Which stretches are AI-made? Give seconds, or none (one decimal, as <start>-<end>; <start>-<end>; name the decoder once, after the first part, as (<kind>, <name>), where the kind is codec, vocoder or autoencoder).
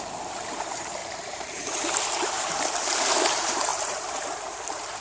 0.0-5.0 (vocoder, BigVGAN v2)